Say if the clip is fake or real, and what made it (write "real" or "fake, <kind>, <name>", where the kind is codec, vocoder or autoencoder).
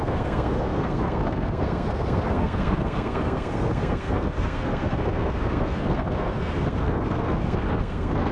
fake, codec, SNAC